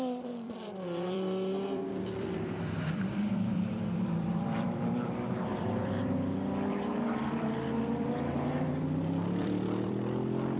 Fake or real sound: fake